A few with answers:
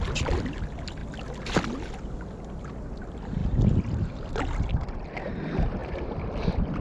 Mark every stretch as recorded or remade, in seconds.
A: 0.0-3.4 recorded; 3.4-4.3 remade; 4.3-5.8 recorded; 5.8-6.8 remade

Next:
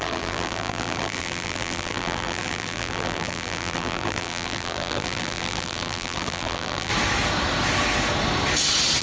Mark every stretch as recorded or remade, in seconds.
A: 0.0-6.9 remade; 6.9-9.0 recorded

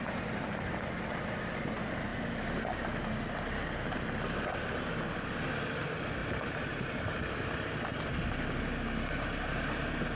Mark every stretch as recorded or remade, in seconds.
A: 0.0-6.2 recorded; 6.2-6.9 remade; 6.9-10.2 recorded

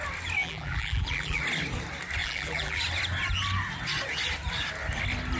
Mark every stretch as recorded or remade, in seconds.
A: 0.0-0.4 recorded; 0.4-1.4 remade; 1.4-2.2 recorded; 2.2-2.8 remade; 2.8-5.4 recorded

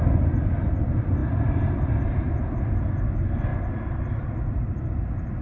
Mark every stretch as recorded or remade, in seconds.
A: 0.0-3.5 recorded; 3.5-5.4 remade

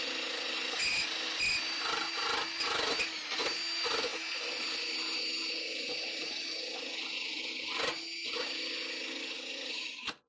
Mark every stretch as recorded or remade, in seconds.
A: 0.0-4.1 recorded; 4.1-5.2 remade; 5.2-10.3 recorded